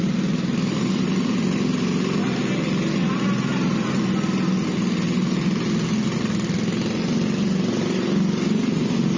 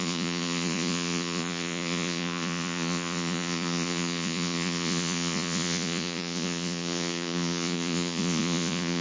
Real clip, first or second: first